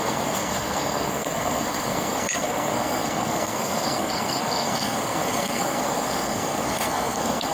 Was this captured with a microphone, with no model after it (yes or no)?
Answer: no